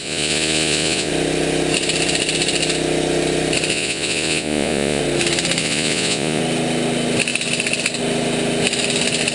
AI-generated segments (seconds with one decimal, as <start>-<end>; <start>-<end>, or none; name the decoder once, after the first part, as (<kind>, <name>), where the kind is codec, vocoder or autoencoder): 0.0-1.1 (vocoder, Vocos); 3.7-5.0; 5.6-6.4

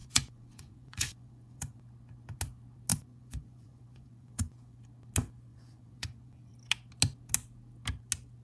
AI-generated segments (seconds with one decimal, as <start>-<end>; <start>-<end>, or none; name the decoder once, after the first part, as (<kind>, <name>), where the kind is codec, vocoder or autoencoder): 0.0-1.8 (vocoder, Vocos); 2.9-4.8; 5.5-6.5

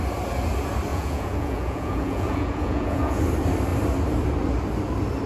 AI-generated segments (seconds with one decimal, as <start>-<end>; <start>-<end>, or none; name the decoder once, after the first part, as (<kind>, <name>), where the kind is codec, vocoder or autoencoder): 0.9-3.2 (vocoder, Vocos)

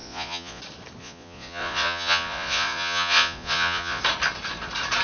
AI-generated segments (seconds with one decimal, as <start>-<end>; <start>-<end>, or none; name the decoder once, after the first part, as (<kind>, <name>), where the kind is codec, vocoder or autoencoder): 0.0-0.6 (vocoder, Vocos); 1.0-4.0

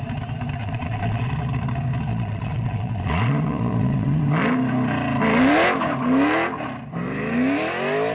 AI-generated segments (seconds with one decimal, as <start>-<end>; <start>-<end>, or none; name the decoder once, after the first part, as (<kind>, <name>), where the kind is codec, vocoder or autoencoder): 0.6-1.3 (vocoder, Vocos); 2.1-4.2

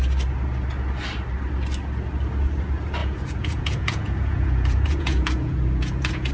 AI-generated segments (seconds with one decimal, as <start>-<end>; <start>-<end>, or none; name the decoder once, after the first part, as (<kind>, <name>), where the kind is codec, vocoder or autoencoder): 3.0-6.3 (vocoder, Vocos)

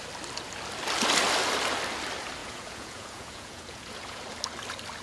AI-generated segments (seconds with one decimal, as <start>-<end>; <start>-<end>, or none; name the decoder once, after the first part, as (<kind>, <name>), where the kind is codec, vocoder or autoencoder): 2.4-4.2 (vocoder, Vocos)